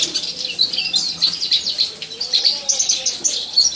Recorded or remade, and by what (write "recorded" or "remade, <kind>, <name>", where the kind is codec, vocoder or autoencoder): recorded